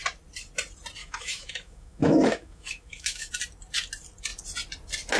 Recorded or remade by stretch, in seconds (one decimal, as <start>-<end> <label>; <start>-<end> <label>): 0.0-1.0 recorded; 1.0-3.3 remade; 3.3-5.2 recorded